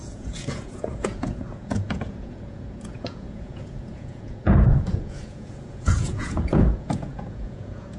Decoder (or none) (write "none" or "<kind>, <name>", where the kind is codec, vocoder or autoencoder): vocoder, Vocos